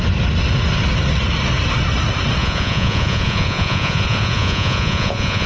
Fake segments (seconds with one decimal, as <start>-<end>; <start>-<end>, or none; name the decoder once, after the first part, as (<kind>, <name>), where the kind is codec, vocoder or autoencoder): 2.4-5.5 (vocoder, Vocos)